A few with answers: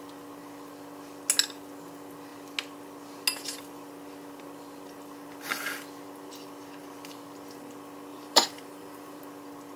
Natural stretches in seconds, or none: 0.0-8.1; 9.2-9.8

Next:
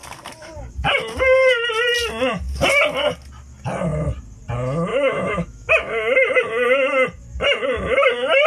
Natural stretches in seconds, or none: 0.0-4.9; 5.7-8.5

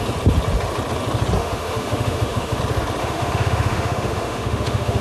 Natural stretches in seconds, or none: 0.0-1.4; 2.6-3.0

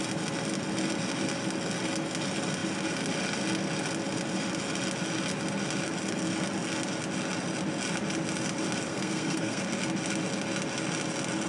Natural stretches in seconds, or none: 0.0-8.9; 9.6-11.5